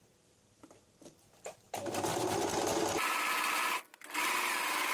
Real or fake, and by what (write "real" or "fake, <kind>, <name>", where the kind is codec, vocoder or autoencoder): real